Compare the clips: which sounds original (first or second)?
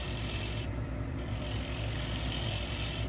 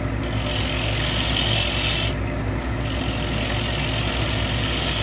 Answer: second